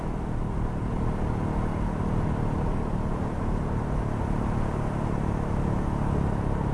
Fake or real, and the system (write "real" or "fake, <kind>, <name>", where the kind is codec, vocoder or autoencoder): real